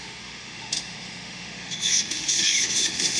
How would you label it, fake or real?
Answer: fake